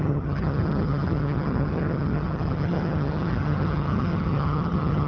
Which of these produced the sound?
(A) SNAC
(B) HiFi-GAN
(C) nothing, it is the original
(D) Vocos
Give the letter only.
B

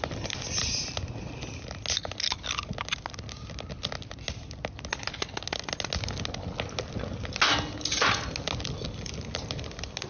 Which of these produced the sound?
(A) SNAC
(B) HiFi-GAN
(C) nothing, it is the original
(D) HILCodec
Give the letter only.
C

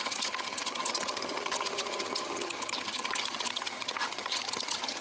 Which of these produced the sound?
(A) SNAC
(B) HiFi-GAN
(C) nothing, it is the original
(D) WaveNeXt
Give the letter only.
B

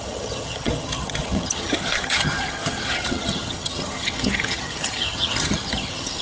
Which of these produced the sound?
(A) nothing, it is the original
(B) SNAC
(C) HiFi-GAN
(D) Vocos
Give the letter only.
C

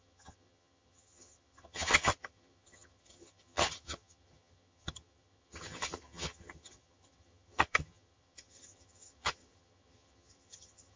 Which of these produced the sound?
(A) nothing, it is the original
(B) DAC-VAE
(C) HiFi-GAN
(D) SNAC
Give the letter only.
C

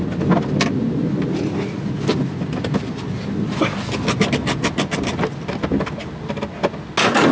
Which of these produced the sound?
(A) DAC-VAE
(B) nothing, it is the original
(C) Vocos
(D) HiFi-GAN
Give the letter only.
B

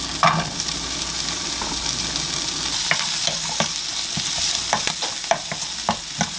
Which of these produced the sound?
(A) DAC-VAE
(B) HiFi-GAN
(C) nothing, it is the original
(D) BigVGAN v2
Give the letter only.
C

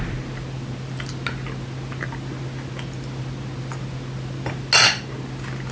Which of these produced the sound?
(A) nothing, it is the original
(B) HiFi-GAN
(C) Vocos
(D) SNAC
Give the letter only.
A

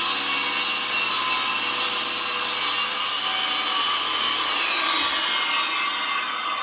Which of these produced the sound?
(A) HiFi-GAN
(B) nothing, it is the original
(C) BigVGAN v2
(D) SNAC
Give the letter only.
B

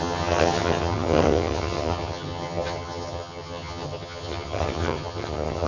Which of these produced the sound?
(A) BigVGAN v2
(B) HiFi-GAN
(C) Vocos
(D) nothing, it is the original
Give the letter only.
B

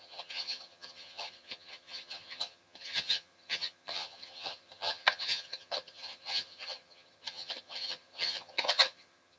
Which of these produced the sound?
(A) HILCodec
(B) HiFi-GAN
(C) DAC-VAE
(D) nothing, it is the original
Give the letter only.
B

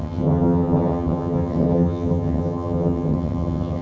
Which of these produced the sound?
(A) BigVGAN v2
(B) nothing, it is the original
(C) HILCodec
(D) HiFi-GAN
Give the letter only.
D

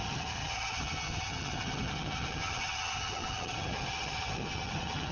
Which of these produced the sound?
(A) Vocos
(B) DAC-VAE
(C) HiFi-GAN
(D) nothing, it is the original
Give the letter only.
C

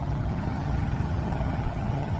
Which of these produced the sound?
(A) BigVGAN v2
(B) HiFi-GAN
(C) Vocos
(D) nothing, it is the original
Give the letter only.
B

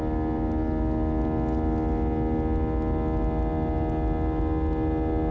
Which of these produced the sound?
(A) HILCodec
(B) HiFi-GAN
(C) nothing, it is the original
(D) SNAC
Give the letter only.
C